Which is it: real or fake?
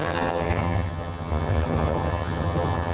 fake